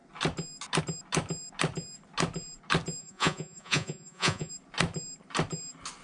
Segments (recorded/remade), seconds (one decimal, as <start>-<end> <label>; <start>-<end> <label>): 0.0-3.0 recorded; 3.0-4.5 remade; 4.5-6.0 recorded